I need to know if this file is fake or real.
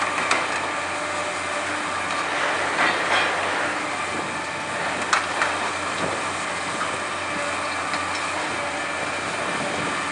real